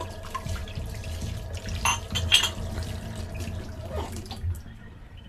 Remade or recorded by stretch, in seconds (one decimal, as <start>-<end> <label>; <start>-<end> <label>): 0.0-0.6 remade; 0.6-3.8 recorded; 3.8-5.3 remade